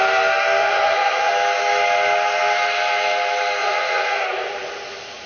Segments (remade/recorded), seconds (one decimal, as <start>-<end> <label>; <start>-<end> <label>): 0.0-0.6 recorded; 0.6-1.3 remade; 1.3-3.6 recorded; 3.6-4.2 remade; 4.2-5.3 recorded